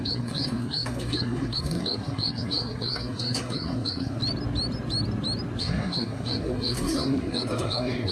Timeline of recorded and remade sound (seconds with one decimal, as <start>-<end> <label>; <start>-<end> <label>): 0.0-4.2 remade; 4.2-5.6 recorded; 5.6-8.1 remade